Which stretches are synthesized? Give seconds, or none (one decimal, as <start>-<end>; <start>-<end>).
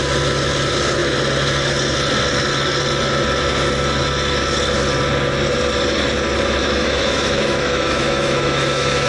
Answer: 6.6-9.1